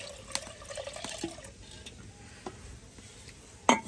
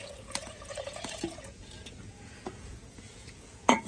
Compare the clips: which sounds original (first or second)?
first